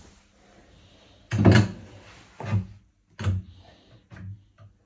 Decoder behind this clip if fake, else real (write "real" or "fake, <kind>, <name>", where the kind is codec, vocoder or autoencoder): real